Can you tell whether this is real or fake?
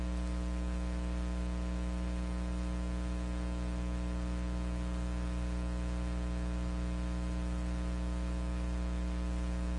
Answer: real